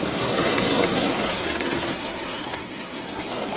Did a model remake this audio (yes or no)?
yes